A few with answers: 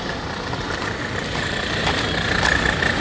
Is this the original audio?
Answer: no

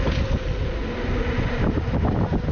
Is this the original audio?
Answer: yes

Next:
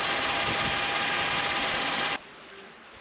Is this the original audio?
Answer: yes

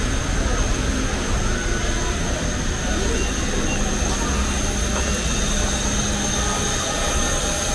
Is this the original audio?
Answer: yes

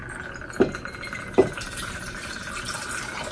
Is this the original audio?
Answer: yes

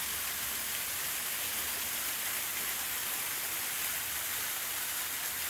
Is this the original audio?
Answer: yes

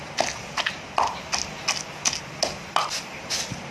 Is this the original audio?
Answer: yes